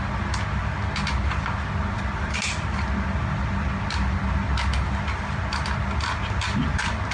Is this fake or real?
real